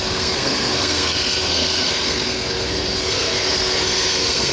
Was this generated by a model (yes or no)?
yes